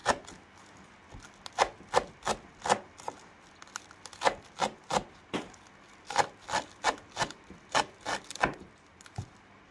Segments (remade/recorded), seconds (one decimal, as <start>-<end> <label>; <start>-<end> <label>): 0.0-9.7 recorded